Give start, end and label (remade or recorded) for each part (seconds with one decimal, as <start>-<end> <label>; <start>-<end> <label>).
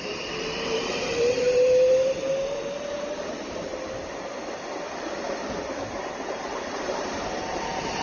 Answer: 0.0-3.7 remade; 3.7-6.7 recorded; 6.7-8.0 remade